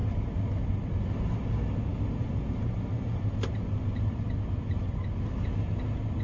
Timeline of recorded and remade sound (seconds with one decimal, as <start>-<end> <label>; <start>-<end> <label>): 0.0-1.9 recorded; 1.9-4.9 remade; 4.9-6.2 recorded